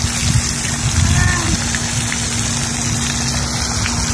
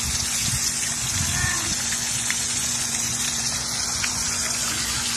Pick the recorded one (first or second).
first